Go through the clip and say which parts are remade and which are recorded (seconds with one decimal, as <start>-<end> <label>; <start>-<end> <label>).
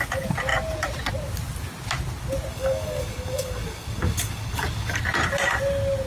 0.0-2.5 recorded; 2.5-5.0 remade; 5.0-6.1 recorded